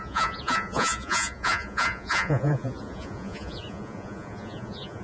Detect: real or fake fake